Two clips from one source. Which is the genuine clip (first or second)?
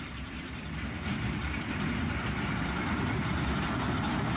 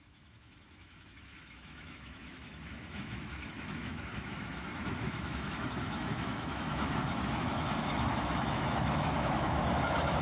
first